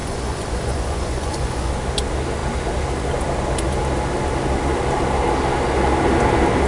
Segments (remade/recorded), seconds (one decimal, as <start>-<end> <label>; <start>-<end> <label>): 0.0-1.7 remade; 1.7-6.7 recorded